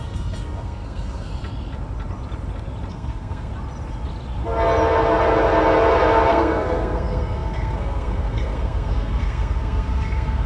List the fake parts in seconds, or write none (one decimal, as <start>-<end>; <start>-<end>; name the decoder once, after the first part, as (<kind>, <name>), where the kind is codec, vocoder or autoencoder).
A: 0.0-1.3 (codec, SNAC); 2.9-3.5; 6.3-10.5